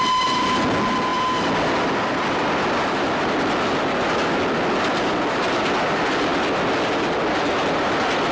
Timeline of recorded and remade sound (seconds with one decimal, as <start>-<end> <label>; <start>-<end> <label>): 0.0-8.3 recorded